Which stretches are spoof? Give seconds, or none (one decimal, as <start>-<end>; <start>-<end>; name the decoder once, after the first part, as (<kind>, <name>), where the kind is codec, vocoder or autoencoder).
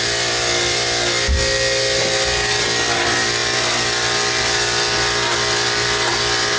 none